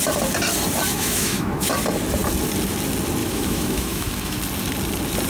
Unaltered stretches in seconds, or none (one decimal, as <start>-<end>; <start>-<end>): 0.0-0.9; 1.7-3.2; 4.4-5.3